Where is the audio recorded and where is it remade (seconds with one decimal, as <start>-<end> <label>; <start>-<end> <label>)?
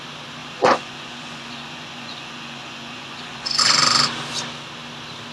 0.0-0.4 recorded; 0.4-3.6 remade; 3.6-5.3 recorded